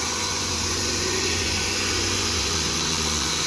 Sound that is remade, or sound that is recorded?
remade